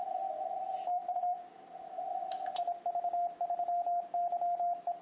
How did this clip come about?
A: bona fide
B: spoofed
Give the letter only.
A